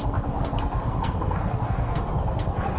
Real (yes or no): no